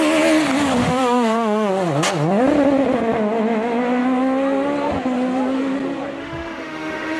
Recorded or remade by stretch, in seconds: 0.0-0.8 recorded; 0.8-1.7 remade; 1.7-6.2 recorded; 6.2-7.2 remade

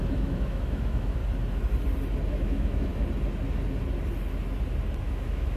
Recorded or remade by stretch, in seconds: 0.0-1.2 remade; 1.2-2.3 recorded; 2.3-2.9 remade; 2.9-5.0 recorded; 5.0-5.6 remade

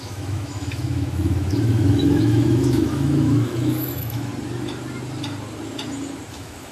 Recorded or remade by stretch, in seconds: 0.0-4.3 remade; 4.3-6.3 recorded; 6.3-6.7 remade